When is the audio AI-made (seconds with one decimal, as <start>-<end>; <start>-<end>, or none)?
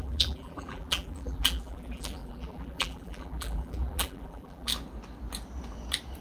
0.0-4.7